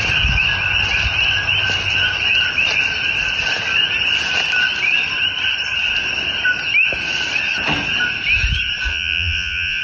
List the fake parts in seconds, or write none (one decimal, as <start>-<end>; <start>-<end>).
8.9-9.8

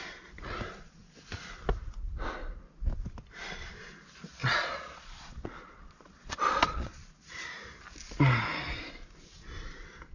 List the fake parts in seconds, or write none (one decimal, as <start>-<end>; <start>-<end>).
4.4-7.0

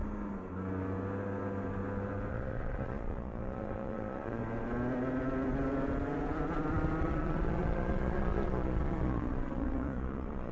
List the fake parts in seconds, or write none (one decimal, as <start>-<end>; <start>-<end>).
2.3-4.4; 7.0-10.5